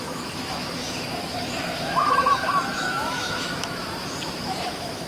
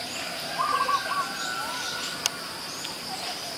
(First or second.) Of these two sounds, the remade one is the first